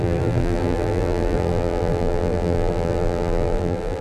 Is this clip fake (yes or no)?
yes